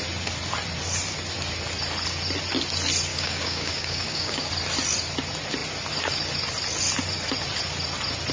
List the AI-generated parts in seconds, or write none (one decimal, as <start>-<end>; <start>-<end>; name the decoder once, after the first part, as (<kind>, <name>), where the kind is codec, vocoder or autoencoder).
3.1-4.5 (codec, DAC)